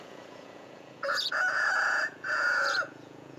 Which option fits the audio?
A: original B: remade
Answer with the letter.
B